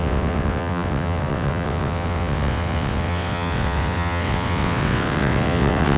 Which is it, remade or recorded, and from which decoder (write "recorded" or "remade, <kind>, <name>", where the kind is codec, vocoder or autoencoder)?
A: remade, vocoder, WaveNeXt